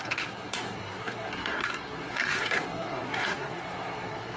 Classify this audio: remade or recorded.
remade